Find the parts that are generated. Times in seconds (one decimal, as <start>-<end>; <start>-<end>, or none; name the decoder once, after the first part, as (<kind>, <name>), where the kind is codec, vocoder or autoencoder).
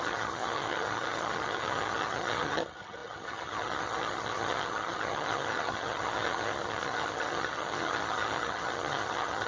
0.0-9.5 (vocoder, HiFi-GAN)